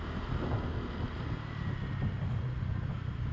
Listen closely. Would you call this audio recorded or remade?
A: recorded